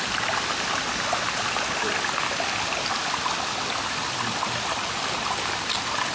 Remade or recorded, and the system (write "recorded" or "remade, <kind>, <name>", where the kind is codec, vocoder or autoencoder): recorded